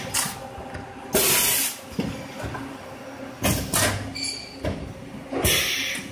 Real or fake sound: real